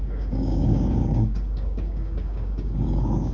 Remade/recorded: remade